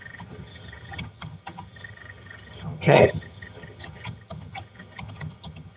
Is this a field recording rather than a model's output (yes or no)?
no